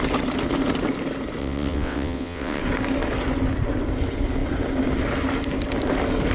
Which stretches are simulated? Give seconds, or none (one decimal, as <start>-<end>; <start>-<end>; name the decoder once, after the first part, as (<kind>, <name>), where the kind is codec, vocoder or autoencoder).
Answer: 1.4-2.6 (vocoder, WaveNeXt)